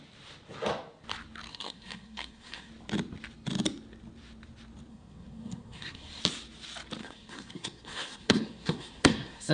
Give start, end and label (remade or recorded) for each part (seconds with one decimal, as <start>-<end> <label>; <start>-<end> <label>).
0.0-1.5 recorded; 1.5-2.7 remade; 2.7-4.9 recorded; 4.9-6.2 remade; 6.2-7.0 recorded; 7.0-9.5 remade

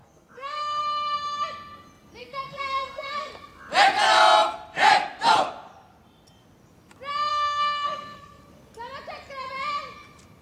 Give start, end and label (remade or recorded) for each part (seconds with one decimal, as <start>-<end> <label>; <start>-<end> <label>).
0.0-0.8 remade; 0.8-2.2 recorded; 2.2-3.3 remade; 3.3-7.3 recorded; 7.3-8.4 remade; 8.4-10.4 recorded

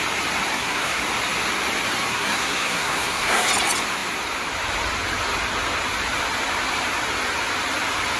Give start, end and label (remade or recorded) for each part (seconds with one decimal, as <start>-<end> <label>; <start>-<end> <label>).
0.0-0.5 recorded; 0.5-1.0 remade; 1.0-2.1 recorded; 2.1-3.5 remade; 3.5-8.2 recorded

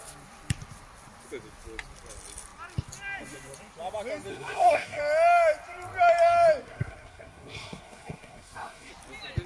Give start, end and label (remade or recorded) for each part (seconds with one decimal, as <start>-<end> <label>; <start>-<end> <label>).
0.0-4.3 recorded; 4.3-5.0 remade; 5.0-6.6 recorded; 6.6-8.9 remade; 8.9-9.5 recorded